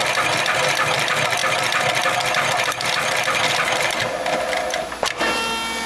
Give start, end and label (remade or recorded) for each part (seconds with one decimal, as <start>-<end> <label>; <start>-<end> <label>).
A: 0.0-5.9 recorded